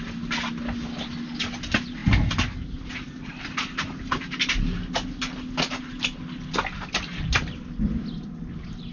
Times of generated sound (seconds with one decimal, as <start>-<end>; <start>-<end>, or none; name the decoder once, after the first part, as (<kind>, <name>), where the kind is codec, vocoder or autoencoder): none